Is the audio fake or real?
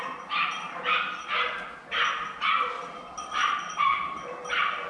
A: real